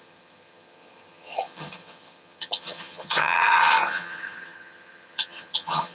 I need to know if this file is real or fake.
fake